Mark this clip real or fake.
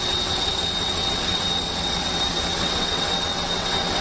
fake